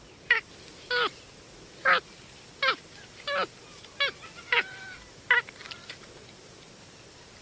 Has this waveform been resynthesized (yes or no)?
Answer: no